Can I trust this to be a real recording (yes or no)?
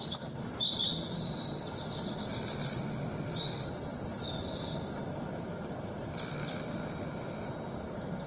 yes